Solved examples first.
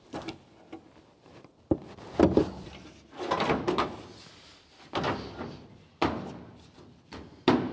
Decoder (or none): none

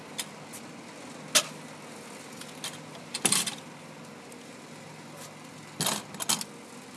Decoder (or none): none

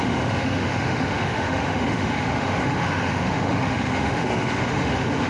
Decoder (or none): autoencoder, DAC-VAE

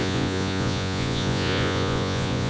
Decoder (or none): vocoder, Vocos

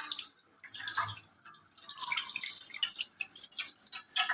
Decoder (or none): none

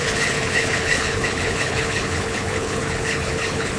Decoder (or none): codec, HILCodec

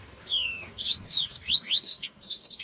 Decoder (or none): codec, DAC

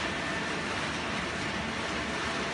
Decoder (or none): none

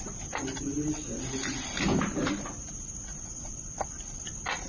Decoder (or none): none